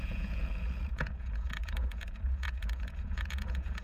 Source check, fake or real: fake